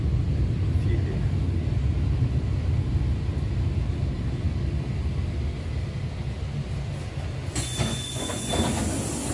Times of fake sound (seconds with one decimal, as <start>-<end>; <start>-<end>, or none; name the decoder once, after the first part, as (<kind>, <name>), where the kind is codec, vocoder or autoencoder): 7.5-8.5 (vocoder, Vocos)